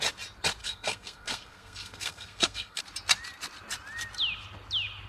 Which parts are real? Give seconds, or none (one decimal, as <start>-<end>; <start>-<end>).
0.0-0.6; 2.8-5.1